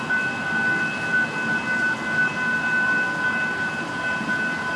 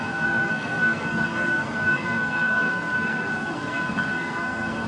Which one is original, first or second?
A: first